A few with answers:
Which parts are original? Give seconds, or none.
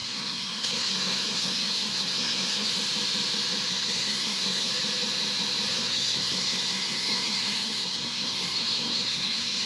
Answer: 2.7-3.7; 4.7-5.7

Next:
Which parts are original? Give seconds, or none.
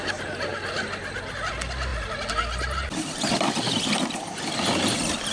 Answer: 0.0-5.3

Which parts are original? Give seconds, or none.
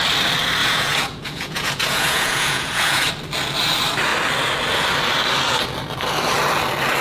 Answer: 0.0-0.6; 3.1-7.0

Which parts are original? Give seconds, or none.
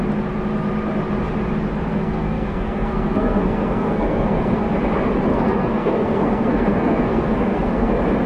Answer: 0.0-1.9; 4.6-5.3; 7.9-8.3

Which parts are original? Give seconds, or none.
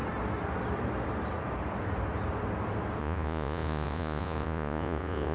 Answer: 0.0-3.0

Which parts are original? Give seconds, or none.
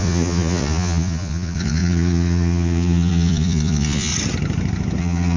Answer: 4.1-5.0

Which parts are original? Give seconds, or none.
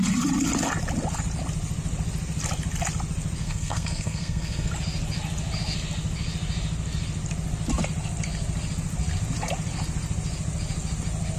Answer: 0.0-3.4; 4.7-11.4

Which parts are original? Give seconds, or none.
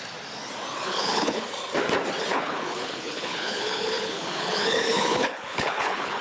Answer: 0.0-0.8; 1.4-2.3